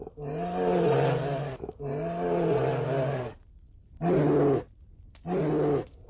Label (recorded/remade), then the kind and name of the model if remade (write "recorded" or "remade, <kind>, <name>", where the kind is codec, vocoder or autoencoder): recorded